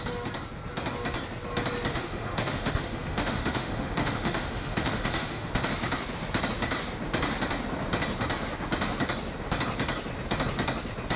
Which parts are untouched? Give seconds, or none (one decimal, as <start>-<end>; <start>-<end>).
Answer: 0.0-1.9; 5.5-11.2